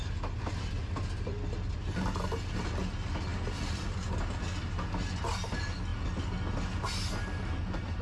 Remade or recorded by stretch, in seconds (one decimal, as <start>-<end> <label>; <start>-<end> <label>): 0.0-8.0 recorded